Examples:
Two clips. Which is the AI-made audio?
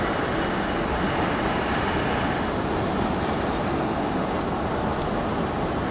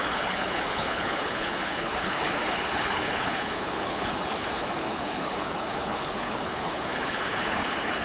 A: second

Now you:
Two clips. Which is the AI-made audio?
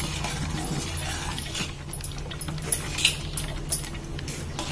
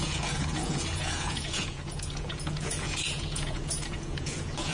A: second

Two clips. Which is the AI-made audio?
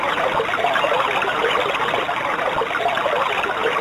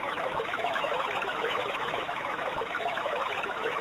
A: second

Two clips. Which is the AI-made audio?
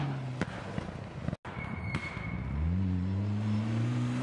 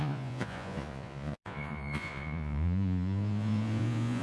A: second